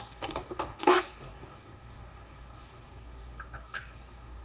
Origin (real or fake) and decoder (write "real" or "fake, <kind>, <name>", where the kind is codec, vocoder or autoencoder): fake, codec, DAC